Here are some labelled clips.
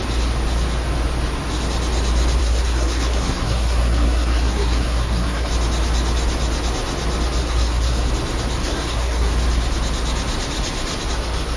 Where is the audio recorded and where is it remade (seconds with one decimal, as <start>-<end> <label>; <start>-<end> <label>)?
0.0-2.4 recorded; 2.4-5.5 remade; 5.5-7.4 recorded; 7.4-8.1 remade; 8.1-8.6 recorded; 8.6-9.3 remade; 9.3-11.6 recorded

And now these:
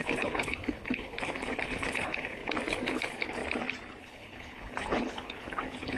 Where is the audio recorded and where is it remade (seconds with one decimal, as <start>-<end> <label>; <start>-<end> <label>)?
0.0-2.4 remade; 2.4-2.9 recorded; 2.9-3.4 remade; 3.4-4.0 recorded; 4.0-6.0 remade

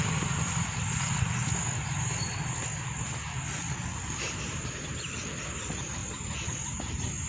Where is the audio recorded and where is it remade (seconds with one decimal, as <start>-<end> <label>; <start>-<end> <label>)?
0.0-1.4 remade; 1.4-3.6 recorded; 3.6-6.0 remade; 6.0-7.3 recorded

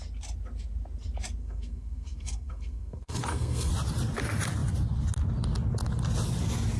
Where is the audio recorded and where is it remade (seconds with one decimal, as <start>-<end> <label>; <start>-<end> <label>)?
0.0-1.4 recorded; 1.4-3.7 remade; 3.7-6.8 recorded

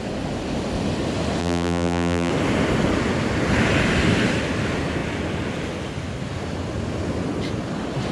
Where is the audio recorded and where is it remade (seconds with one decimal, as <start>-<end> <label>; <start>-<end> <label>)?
0.0-1.4 recorded; 1.4-2.3 remade; 2.3-8.1 recorded